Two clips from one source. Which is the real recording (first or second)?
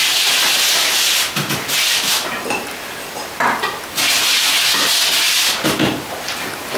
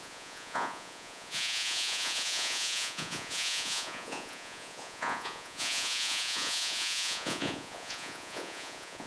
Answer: first